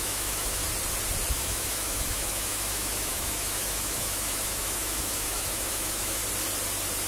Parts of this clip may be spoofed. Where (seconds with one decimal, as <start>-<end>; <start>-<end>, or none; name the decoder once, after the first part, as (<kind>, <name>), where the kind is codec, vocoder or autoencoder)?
0.0-0.6 (autoencoder, DAC-VAE); 1.3-6.2